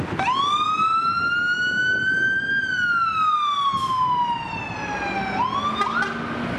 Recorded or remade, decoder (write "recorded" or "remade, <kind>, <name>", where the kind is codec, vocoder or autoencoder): recorded